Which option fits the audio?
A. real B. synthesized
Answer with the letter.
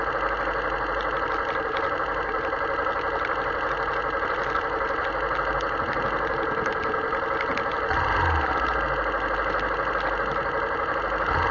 A